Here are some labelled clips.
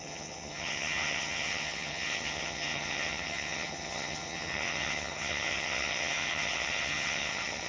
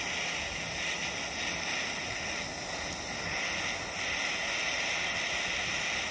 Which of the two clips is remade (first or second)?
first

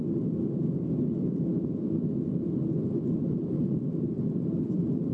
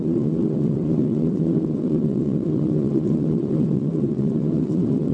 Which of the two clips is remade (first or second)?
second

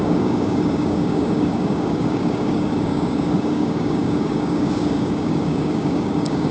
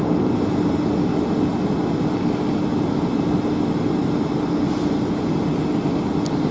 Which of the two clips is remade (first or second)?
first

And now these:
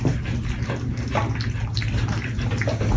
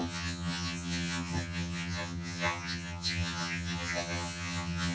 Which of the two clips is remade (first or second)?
second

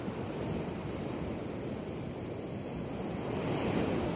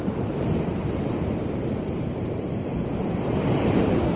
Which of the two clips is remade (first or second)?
second